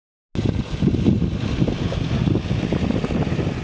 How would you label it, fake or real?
real